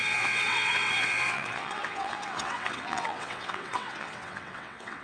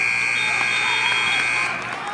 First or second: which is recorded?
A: second